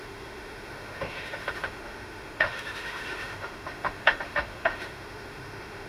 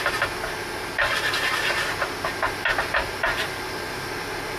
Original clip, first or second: second